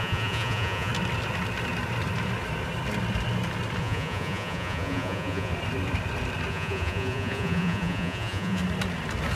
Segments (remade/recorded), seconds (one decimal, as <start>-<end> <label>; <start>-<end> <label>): 0.0-0.9 remade; 0.9-3.8 recorded; 3.8-5.5 remade; 5.5-6.5 recorded; 6.5-8.6 remade; 8.6-9.4 recorded